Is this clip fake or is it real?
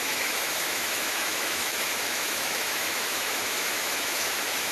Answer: fake